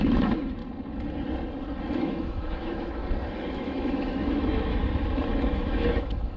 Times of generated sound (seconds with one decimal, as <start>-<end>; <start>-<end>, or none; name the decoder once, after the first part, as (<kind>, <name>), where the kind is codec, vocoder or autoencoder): 0.0-0.6 (autoencoder, DAC-VAE); 2.0-3.0; 3.5-4.8; 5.4-6.4